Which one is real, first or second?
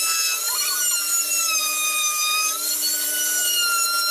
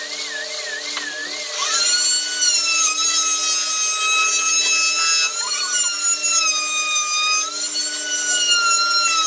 second